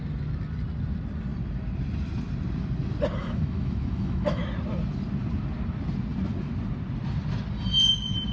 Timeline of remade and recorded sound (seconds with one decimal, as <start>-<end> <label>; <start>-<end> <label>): 0.0-3.2 recorded; 3.2-4.4 remade; 4.4-8.3 recorded